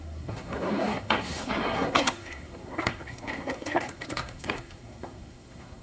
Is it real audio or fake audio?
fake